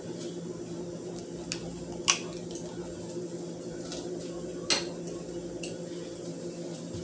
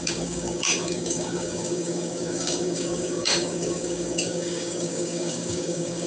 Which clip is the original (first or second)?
first